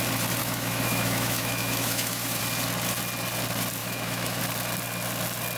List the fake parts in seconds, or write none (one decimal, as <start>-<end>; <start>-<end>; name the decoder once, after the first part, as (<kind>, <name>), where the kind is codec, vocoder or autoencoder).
0.4-2.4 (autoencoder, DAC-VAE); 3.8-4.4